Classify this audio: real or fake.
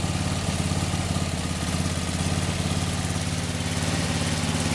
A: real